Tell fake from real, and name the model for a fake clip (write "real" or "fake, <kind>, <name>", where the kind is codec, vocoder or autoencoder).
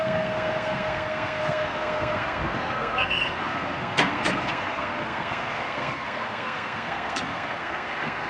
fake, codec, SNAC